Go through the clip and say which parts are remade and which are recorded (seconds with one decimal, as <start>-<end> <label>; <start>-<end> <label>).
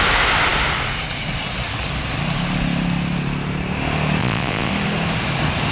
0.0-4.2 recorded; 4.2-4.7 remade; 4.7-5.7 recorded